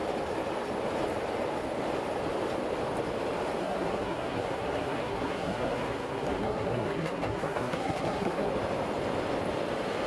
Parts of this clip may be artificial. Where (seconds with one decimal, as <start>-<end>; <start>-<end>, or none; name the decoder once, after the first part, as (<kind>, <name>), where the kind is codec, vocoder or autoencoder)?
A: 3.6-8.5 (codec, SNAC)